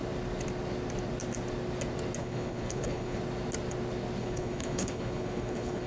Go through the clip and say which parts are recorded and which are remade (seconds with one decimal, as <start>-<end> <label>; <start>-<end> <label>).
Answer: 0.0-2.2 recorded; 2.2-3.2 remade; 3.2-4.2 recorded; 4.2-5.9 remade